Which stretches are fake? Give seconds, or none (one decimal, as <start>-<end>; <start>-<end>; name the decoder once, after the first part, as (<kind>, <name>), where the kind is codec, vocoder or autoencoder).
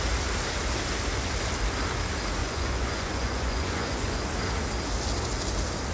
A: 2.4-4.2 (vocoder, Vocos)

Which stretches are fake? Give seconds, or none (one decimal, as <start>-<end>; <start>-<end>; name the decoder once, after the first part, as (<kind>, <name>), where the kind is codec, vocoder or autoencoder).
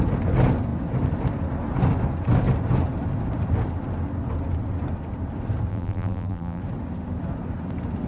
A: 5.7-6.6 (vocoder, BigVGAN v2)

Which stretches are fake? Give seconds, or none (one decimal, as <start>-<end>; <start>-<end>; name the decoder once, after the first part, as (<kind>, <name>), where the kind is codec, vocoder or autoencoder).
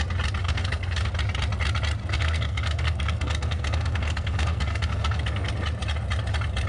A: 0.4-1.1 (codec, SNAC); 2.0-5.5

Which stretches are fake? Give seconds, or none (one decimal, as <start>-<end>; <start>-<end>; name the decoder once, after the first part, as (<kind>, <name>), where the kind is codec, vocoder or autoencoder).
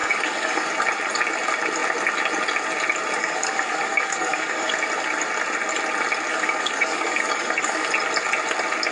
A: 0.0-0.7 (codec, DAC); 3.2-4.7; 6.3-7.9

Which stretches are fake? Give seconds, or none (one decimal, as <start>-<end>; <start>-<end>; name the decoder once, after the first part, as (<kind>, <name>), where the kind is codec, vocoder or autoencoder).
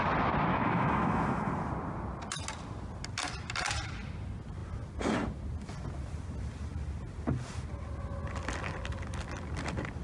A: 0.5-1.5 (autoencoder, DAC-VAE)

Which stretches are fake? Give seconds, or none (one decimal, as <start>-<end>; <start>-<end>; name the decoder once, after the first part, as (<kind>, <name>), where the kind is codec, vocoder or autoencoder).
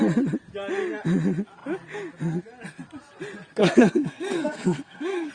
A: 3.6-5.3 (codec, SNAC)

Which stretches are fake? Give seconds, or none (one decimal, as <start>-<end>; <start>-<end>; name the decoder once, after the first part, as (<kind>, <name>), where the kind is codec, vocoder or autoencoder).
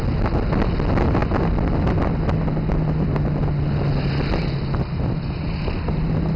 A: none